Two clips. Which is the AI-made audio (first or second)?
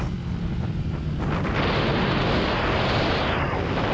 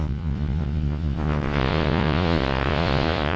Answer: second